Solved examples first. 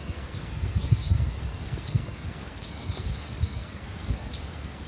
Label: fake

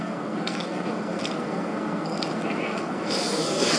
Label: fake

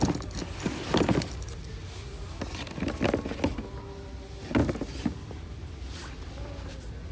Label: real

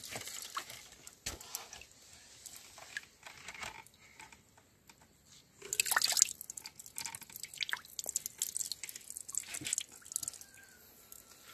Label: real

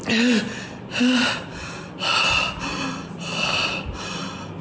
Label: real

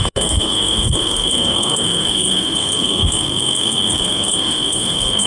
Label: fake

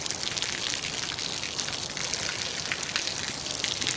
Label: real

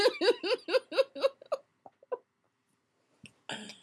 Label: real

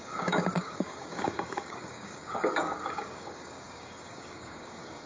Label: fake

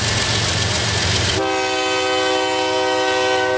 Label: real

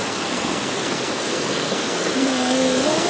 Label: fake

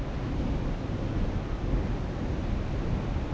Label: real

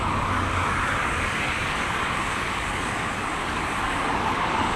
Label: fake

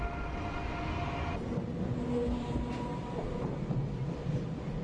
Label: real